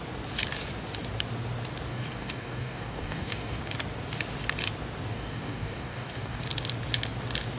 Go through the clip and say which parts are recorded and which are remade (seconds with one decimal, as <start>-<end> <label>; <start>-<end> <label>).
0.0-1.9 recorded; 1.9-3.6 remade; 3.6-5.1 recorded; 5.1-6.4 remade; 6.4-7.6 recorded